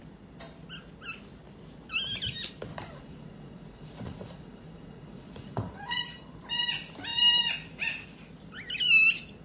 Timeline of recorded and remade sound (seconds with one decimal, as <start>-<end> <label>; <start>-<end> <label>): 0.0-2.7 recorded; 2.7-6.0 remade; 6.0-9.4 recorded